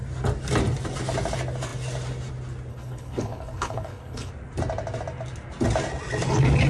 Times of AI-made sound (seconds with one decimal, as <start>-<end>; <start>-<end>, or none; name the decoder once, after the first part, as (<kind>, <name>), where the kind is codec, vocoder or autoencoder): 2.7-4.3 (codec, HILCodec)